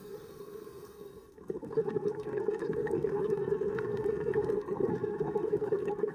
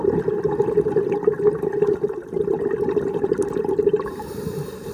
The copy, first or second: first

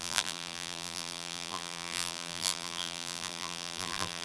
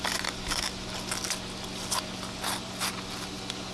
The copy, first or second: first